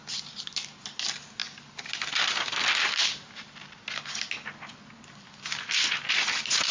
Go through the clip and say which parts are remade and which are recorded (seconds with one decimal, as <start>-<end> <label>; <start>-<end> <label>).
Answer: 0.0-6.7 recorded